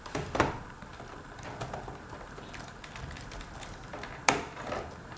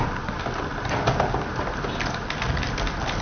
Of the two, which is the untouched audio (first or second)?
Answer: second